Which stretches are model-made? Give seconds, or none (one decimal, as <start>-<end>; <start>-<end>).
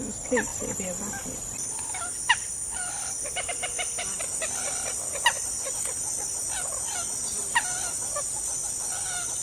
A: 0.0-0.5; 1.1-7.4; 8.4-9.4